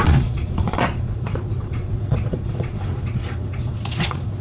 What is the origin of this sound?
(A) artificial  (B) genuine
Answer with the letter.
A